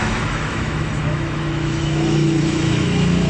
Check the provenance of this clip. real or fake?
fake